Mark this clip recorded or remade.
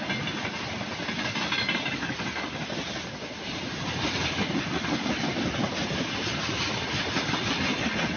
recorded